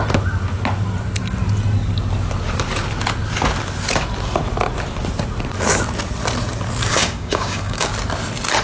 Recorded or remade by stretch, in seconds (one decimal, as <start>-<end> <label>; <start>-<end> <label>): 0.0-6.9 recorded; 6.9-7.9 remade; 7.9-8.6 recorded